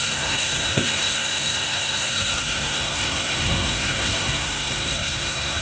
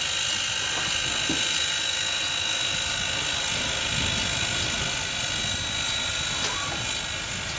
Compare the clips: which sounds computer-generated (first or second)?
first